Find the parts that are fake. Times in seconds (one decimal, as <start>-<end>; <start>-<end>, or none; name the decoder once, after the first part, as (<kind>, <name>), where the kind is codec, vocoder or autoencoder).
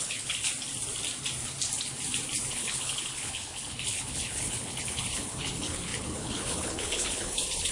0.0-0.5 (codec, HILCodec); 2.5-7.7